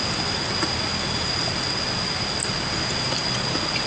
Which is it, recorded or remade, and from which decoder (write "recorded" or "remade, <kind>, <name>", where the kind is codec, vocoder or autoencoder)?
recorded